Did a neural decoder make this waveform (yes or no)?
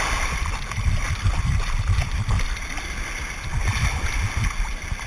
no